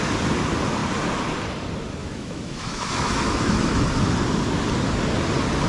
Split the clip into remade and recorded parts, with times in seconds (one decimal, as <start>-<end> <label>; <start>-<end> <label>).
0.0-2.0 recorded; 2.0-3.8 remade; 3.8-5.7 recorded